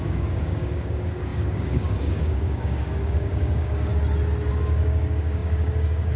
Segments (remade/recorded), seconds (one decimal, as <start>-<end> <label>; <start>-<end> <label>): 0.0-3.9 remade; 3.9-4.5 recorded; 4.5-6.2 remade